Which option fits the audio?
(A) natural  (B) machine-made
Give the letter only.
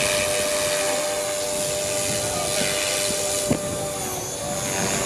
A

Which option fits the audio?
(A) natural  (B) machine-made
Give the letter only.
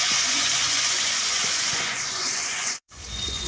B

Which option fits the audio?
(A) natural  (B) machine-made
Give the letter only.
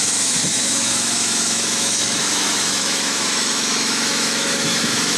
B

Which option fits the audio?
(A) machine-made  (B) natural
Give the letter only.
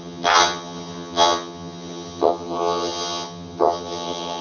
A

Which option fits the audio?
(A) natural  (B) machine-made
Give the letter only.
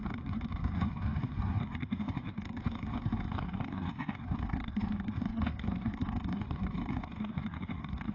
B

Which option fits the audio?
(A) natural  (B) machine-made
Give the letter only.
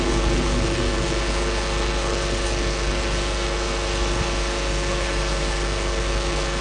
B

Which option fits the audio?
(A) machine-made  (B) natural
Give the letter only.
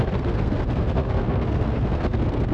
A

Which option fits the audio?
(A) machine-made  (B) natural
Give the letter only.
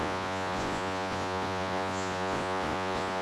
A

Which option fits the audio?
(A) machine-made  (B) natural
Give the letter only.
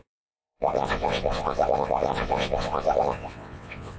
A